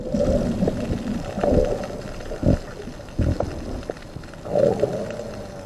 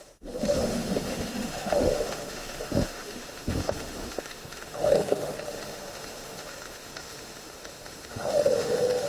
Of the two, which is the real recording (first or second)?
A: first